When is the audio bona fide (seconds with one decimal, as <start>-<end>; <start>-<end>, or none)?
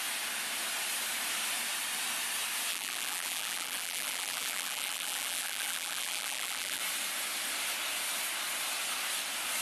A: 0.0-2.7; 6.8-9.6